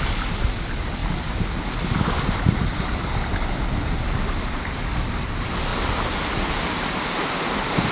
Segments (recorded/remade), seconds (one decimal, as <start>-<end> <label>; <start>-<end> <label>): 0.0-7.9 recorded